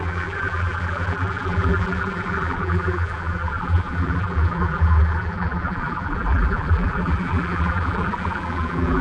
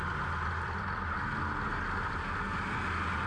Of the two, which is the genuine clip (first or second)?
second